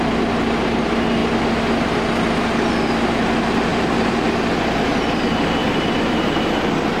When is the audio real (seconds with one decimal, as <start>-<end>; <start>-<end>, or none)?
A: 0.0-3.7; 4.8-5.6; 6.3-7.0